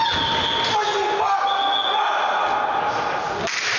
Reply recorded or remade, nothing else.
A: recorded